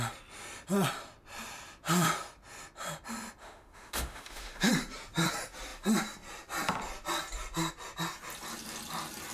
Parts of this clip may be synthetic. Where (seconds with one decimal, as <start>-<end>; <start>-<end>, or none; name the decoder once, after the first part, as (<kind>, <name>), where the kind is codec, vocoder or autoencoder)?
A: 3.4-4.7 (autoencoder, DAC-VAE)